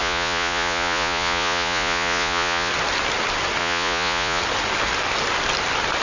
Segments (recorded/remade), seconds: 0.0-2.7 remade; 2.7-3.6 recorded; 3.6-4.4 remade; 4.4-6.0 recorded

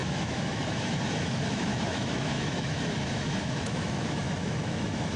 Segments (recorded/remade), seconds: 0.0-5.2 remade

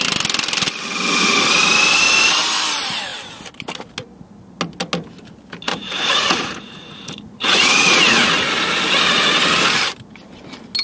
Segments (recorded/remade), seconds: 0.0-5.7 recorded; 5.7-8.8 remade; 8.8-10.8 recorded

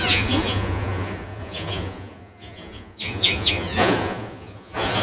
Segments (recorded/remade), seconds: 0.0-5.0 remade

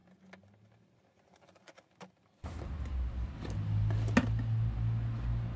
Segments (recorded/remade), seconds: 0.0-5.6 recorded

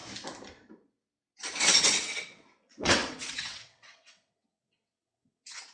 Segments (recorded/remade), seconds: 0.0-1.8 recorded; 1.8-5.7 remade

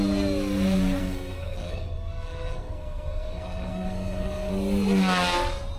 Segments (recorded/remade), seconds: 0.0-1.0 recorded; 1.0-4.5 remade; 4.5-5.8 recorded

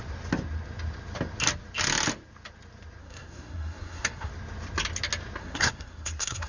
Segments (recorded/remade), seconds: 0.0-3.0 recorded; 3.0-4.3 remade; 4.3-5.4 recorded; 5.4-6.5 remade